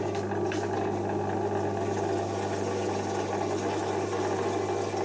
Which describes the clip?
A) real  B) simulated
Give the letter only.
A